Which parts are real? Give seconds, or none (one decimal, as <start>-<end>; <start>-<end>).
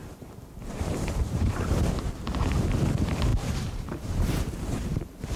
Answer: 2.1-3.3; 5.0-5.4